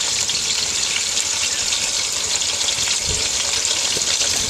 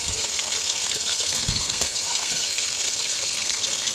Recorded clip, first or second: first